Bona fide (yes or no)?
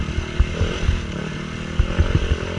yes